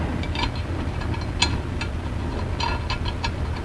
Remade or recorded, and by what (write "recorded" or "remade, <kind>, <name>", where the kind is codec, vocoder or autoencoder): recorded